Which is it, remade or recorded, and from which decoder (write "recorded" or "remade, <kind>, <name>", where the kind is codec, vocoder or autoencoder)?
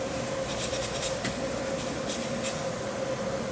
recorded